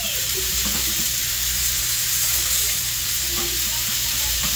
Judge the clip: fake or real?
fake